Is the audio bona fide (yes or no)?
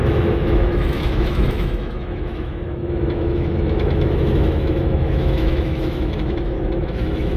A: no